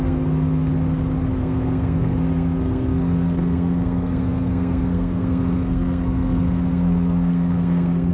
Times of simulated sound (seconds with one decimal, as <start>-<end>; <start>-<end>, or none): 0.0-0.7; 1.4-8.1

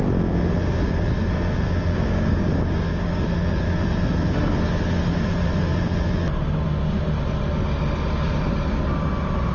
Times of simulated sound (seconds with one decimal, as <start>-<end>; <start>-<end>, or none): 1.9-3.2

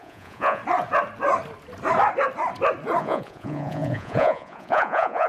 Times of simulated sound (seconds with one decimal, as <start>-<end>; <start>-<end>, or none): 0.0-0.6; 3.0-5.3

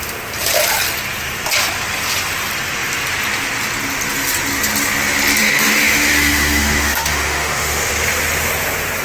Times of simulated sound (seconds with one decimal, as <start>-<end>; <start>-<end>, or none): 5.4-7.9

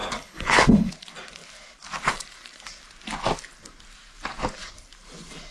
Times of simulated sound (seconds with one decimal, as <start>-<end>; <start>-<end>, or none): 0.0-0.9

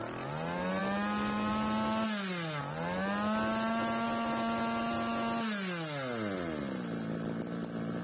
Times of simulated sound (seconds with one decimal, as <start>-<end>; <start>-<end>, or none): none

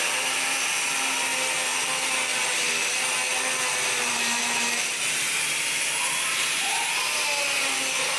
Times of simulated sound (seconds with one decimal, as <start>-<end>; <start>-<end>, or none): none

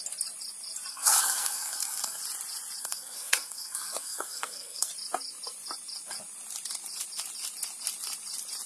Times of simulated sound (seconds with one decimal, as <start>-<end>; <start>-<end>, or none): 0.9-2.2; 2.8-4.9